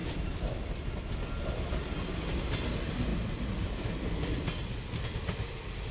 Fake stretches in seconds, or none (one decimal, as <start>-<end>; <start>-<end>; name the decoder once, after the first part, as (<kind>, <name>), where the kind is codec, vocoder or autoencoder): none